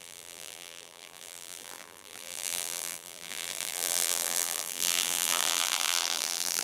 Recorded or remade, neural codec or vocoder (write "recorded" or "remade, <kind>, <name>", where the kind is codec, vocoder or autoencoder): remade, vocoder, BigVGAN v2